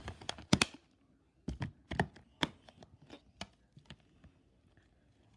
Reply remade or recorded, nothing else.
recorded